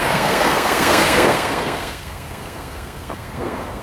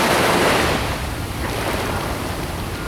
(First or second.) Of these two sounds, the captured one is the second